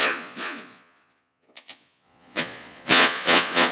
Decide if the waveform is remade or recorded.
remade